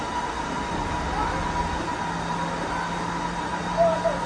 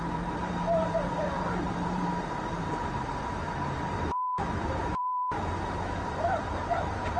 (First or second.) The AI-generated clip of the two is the second